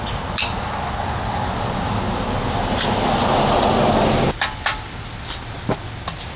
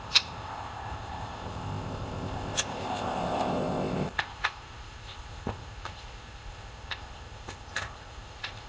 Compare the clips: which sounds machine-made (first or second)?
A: second